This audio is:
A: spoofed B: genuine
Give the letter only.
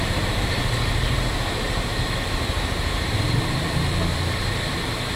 A